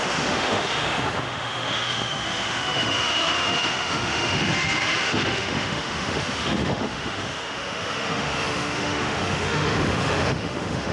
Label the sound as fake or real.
fake